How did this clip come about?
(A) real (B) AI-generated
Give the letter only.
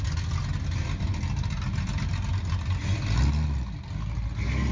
A